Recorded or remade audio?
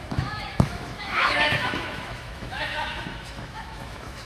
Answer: remade